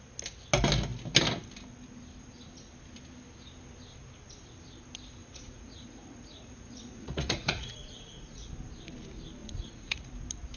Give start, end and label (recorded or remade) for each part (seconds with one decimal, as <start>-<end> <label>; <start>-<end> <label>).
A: 0.0-5.2 recorded; 5.2-8.5 remade; 8.5-9.4 recorded; 9.4-10.1 remade; 10.1-10.6 recorded